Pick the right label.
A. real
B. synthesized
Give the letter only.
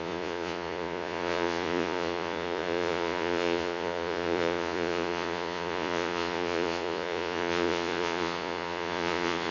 B